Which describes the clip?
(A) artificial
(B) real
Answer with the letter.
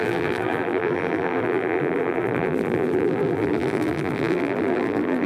A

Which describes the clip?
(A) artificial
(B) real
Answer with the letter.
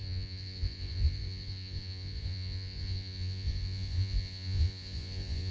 A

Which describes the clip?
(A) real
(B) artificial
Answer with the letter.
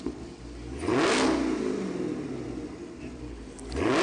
A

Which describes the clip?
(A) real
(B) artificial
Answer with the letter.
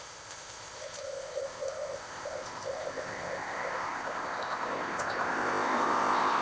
B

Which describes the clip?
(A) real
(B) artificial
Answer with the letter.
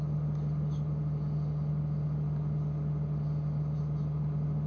A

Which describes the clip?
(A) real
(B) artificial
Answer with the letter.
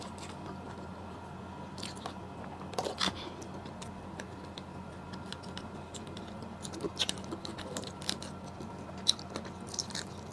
A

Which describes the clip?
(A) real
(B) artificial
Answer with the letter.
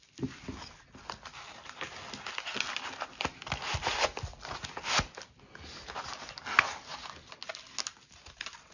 A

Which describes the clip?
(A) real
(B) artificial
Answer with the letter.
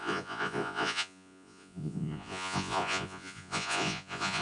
B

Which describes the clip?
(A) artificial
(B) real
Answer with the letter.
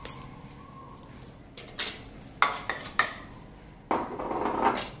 B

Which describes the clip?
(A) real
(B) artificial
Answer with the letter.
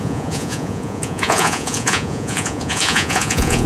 B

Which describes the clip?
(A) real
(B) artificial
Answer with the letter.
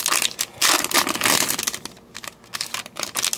A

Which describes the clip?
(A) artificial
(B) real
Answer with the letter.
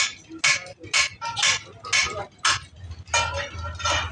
B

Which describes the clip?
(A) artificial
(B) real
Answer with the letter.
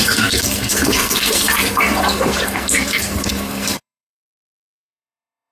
A